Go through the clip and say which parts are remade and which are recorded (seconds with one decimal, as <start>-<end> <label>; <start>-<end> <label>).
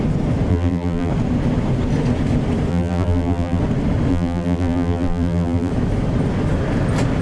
0.0-0.5 recorded; 0.5-1.1 remade; 1.1-2.7 recorded; 2.7-3.6 remade; 3.6-4.1 recorded; 4.1-5.7 remade; 5.7-7.2 recorded